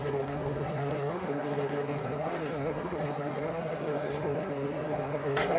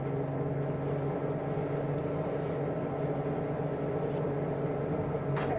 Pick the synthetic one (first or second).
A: first